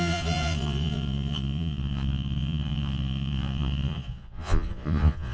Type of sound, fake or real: fake